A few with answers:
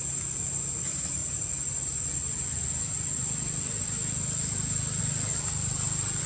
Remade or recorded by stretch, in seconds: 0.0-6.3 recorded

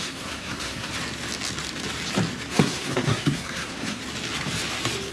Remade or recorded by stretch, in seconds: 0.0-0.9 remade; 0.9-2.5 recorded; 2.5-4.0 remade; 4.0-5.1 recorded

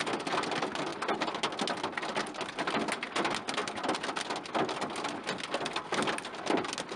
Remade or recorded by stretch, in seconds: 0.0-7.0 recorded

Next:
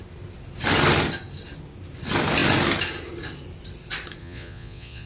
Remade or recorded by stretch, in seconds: 0.0-4.2 recorded; 4.2-5.1 remade

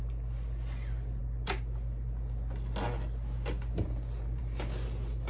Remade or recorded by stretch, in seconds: 0.0-5.3 recorded

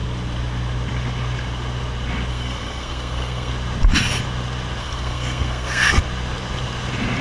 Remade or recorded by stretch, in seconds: 0.0-2.3 recorded; 2.3-3.5 remade; 3.5-4.8 recorded; 4.8-5.9 remade; 5.9-7.2 recorded